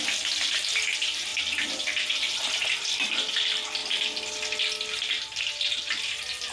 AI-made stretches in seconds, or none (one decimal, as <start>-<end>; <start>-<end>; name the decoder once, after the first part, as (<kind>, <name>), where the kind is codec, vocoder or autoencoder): none